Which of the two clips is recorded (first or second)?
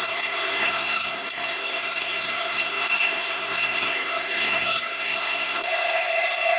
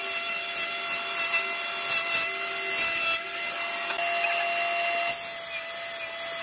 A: second